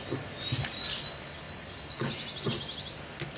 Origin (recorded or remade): recorded